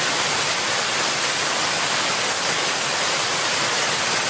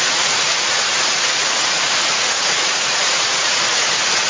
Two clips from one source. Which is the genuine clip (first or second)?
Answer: first